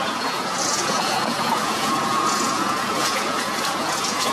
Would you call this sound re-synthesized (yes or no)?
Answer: yes